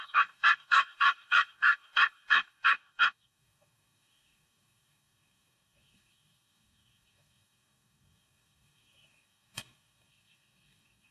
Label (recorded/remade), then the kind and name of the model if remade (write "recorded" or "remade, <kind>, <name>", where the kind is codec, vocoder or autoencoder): remade, codec, DAC